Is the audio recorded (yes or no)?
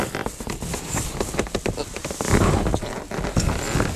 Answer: yes